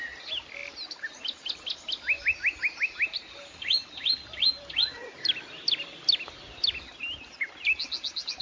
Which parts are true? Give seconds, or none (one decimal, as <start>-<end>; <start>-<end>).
0.0-8.4